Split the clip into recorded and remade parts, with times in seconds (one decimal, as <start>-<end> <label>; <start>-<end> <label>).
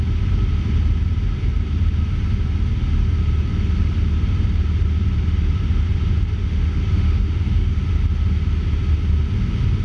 0.0-6.4 recorded; 6.4-7.9 remade; 7.9-9.8 recorded